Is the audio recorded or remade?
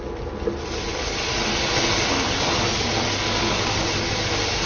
recorded